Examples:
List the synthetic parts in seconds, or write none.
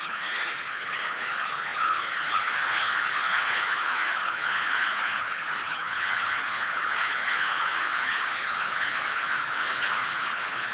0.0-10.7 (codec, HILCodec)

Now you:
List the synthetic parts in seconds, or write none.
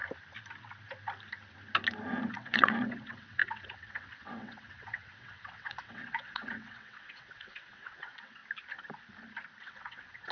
2.3-8.4 (vocoder, WaveNeXt); 9.6-10.3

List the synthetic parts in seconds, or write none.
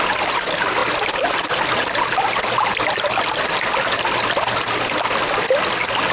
none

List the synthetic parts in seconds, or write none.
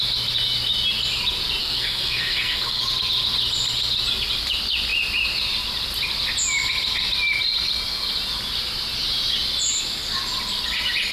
1.6-2.8 (codec, SNAC)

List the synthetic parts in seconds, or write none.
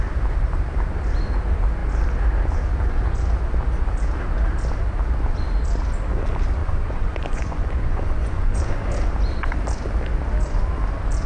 6.6-8.9 (vocoder, Vocos)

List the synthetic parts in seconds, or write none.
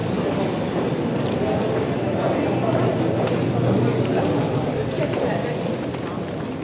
none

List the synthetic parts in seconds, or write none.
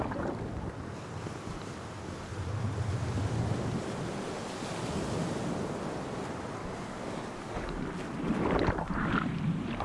6.6-7.8 (codec, DAC)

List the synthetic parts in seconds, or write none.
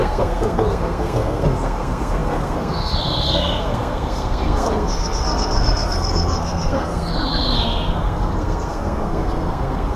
0.0-10.0 (codec, SNAC)